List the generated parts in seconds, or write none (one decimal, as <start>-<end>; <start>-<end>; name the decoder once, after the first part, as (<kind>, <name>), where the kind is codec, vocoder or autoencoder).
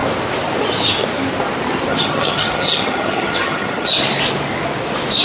1.9-3.9 (vocoder, HiFi-GAN)